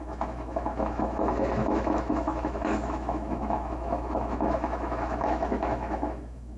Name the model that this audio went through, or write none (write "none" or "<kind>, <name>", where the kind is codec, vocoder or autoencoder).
autoencoder, DAC-VAE